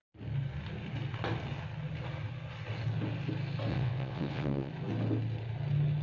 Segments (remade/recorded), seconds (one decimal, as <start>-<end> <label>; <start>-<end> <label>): 0.0-3.7 recorded; 3.7-4.7 remade; 4.7-6.0 recorded

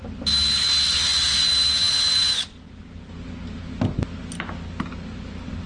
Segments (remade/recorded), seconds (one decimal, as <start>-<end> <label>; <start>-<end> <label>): 0.0-5.7 recorded

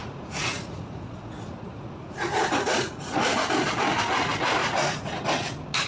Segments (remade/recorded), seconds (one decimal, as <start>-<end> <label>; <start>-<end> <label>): 0.0-3.5 remade; 3.5-4.6 recorded; 4.6-5.2 remade; 5.2-5.9 recorded

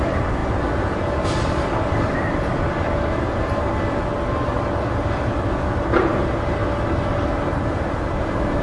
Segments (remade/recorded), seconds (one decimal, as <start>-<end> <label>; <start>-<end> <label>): 0.0-4.1 remade; 4.1-4.8 recorded; 4.8-6.6 remade; 6.6-8.2 recorded; 8.2-8.6 remade

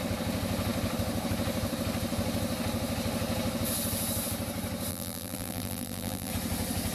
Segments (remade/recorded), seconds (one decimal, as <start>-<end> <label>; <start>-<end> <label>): 0.0-4.9 recorded; 4.9-6.3 remade; 6.3-6.9 recorded

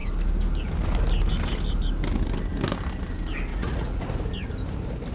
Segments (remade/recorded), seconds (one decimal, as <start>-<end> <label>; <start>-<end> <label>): 0.0-3.5 recorded; 3.5-4.0 remade; 4.0-5.1 recorded

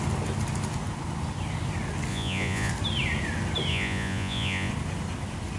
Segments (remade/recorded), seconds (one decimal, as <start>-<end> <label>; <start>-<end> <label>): 0.0-2.1 recorded; 2.1-2.7 remade; 2.7-3.7 recorded; 3.7-4.7 remade; 4.7-5.6 recorded

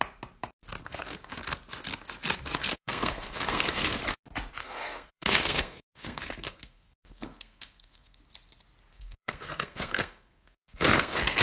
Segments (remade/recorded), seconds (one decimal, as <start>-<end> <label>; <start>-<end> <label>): 0.0-0.8 recorded; 0.8-1.3 remade; 1.3-2.6 recorded; 2.6-4.0 remade; 4.0-4.6 recorded; 4.6-8.2 remade; 8.2-8.9 recorded; 8.9-11.4 remade